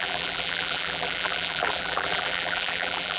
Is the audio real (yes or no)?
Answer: no